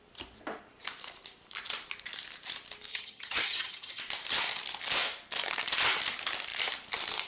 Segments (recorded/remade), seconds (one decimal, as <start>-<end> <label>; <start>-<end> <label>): 0.0-2.9 recorded; 2.9-4.0 remade; 4.0-7.3 recorded